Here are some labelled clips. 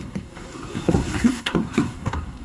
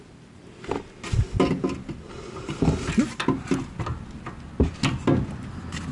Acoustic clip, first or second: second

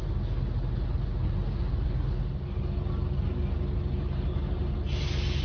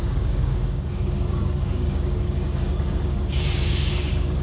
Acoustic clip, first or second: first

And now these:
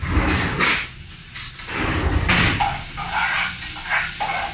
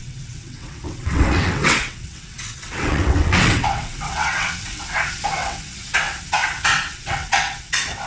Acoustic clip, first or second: first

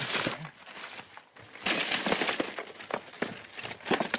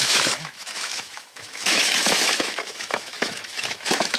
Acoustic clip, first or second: first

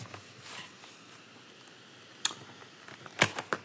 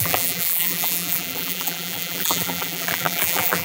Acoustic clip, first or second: first